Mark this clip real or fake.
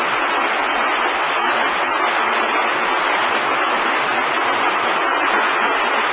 real